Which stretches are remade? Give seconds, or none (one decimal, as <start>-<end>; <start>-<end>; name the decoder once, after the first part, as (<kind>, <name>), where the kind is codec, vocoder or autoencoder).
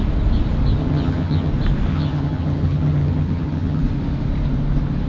0.8-1.5 (vocoder, HiFi-GAN); 1.9-3.8